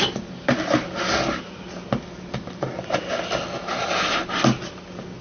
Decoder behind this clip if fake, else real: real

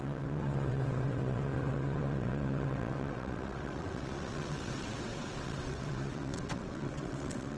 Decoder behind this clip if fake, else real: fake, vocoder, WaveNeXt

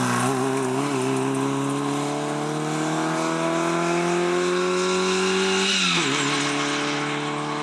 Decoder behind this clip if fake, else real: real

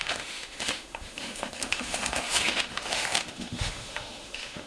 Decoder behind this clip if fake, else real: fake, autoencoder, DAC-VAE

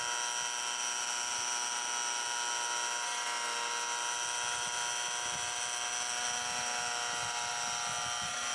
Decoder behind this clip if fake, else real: real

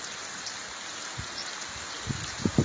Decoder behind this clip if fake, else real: real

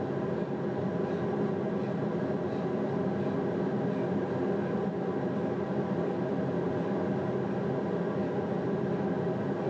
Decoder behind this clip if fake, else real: real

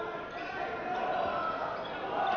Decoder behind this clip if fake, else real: real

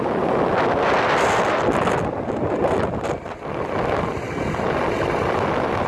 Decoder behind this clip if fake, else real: real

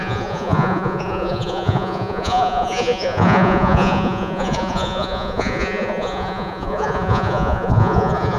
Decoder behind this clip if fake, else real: fake, vocoder, Vocos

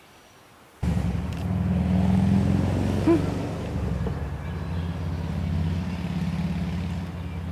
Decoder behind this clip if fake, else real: real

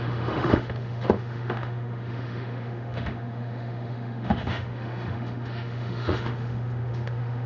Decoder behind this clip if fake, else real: fake, autoencoder, DAC-VAE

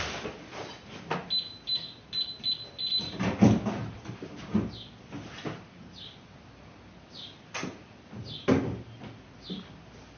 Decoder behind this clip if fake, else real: real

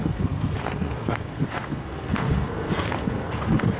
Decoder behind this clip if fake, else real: fake, codec, SNAC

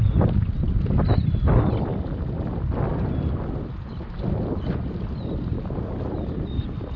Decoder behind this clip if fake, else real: real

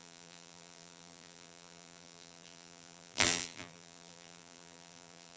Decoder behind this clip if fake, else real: fake, vocoder, BigVGAN v2